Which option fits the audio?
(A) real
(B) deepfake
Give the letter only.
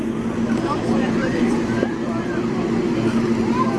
A